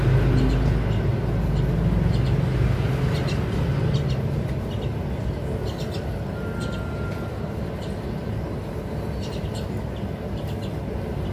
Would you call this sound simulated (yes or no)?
no